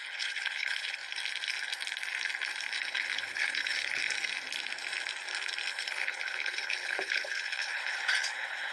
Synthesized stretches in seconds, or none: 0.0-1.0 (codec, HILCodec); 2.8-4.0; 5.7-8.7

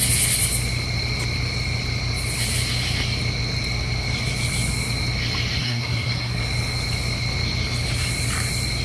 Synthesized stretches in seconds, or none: 5.6-6.4 (codec, SNAC)

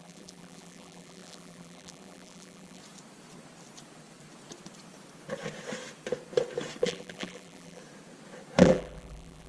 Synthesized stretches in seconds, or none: 0.0-2.8 (vocoder, BigVGAN v2); 6.8-7.8; 8.6-9.5

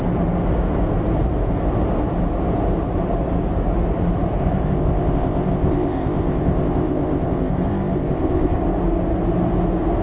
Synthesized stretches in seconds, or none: 4.4-8.6 (codec, ZipCodec)

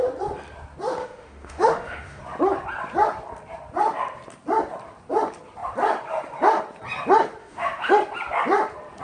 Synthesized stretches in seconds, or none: 1.0-2.2 (autoencoder, DAC-VAE); 7.4-7.9

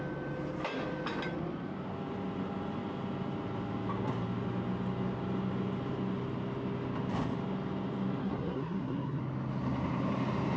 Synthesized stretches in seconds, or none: 8.2-9.2 (codec, SNAC)

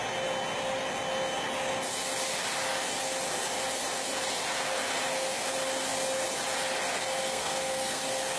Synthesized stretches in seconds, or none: 7.2-8.0 (codec, SNAC)